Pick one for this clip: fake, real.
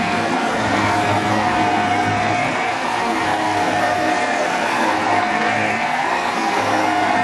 fake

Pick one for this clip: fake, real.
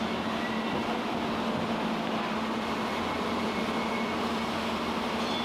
real